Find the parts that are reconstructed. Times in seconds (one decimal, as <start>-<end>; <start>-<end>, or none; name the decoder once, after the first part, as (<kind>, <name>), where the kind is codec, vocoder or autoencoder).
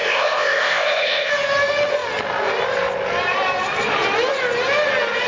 0.0-1.3 (codec, ZipCodec)